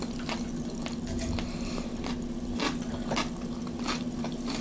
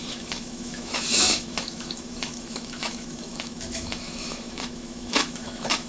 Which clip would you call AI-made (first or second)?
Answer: second